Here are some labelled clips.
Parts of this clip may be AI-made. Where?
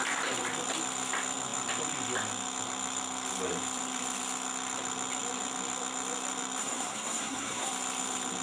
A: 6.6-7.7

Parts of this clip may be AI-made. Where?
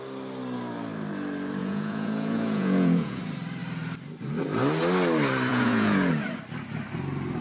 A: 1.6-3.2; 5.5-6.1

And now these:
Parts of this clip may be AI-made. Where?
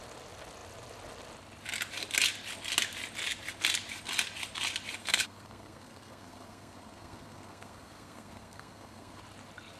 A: 5.0-9.2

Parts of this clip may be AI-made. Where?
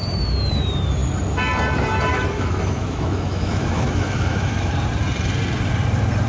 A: 2.1-4.7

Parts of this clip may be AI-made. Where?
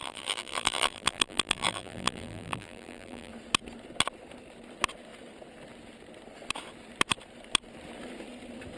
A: 0.0-3.3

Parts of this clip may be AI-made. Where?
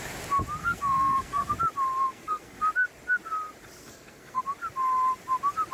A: 0.6-1.5; 2.0-2.6; 3.8-4.4